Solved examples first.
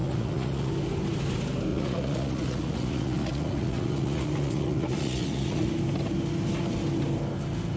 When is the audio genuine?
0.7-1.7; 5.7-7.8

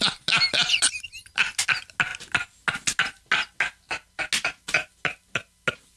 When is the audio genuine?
0.0-6.0

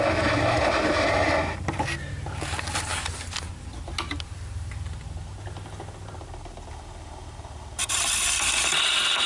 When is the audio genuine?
0.0-9.3

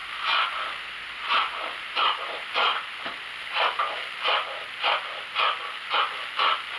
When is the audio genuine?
0.0-1.4; 2.7-6.8

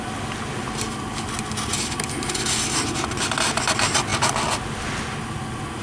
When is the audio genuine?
0.0-5.8

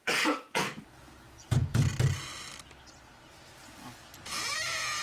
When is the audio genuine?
1.9-4.2

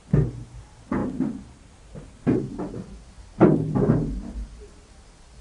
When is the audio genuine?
0.0-5.4